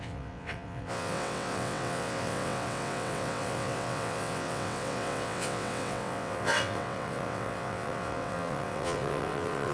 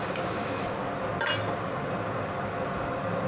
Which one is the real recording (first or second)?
second